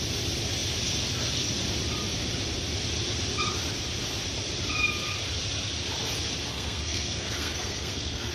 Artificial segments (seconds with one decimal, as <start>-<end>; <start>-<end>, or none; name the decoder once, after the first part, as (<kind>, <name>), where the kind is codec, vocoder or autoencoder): 6.5-8.3 (codec, SNAC)

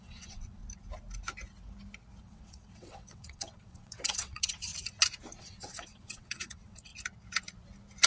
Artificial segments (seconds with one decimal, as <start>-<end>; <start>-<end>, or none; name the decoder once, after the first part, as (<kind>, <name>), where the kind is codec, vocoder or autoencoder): 0.0-0.6 (vocoder, WaveNeXt); 2.2-4.7; 5.4-6.9